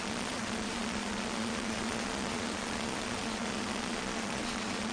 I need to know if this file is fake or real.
fake